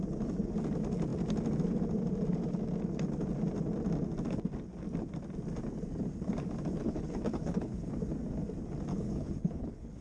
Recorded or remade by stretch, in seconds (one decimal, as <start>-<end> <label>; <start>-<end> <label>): 0.0-6.8 recorded; 6.8-7.9 remade; 7.9-8.9 recorded; 8.9-10.0 remade